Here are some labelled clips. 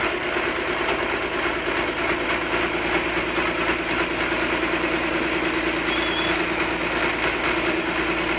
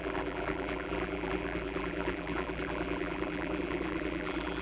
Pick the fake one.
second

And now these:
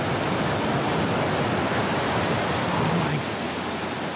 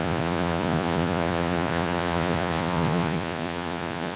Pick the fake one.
second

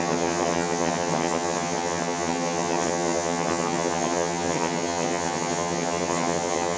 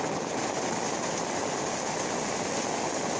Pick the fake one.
first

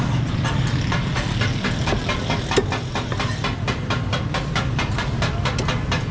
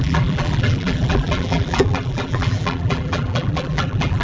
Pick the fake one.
second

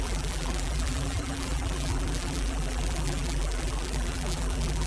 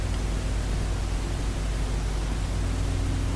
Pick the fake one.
first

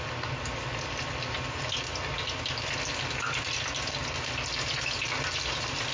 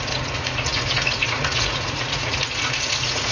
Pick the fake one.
second